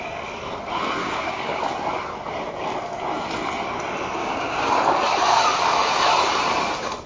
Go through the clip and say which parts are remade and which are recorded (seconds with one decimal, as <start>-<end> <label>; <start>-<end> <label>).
0.0-1.0 recorded; 1.0-1.6 remade; 1.6-4.2 recorded; 4.2-4.7 remade; 4.7-7.1 recorded